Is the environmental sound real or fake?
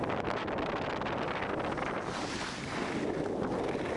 real